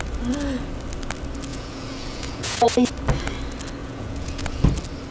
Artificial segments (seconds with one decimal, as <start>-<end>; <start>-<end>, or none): 1.5-2.7; 3.8-4.6